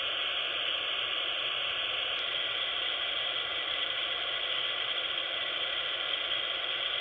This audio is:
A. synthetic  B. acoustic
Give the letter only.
B